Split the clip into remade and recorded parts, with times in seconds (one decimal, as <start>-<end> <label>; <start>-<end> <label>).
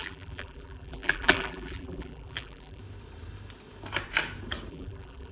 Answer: 0.0-2.8 remade; 2.8-4.7 recorded; 4.7-5.3 remade